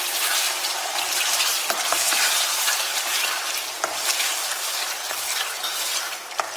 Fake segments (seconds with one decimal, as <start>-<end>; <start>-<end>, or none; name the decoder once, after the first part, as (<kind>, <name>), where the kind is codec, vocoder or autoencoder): 0.0-6.6 (vocoder, BigVGAN v2)